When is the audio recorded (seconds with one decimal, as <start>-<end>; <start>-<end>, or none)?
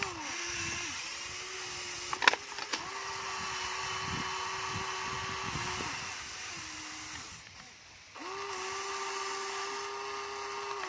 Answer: 0.0-10.9